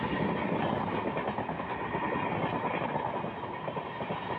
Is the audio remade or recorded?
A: recorded